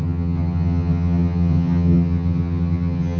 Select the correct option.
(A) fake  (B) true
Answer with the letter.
A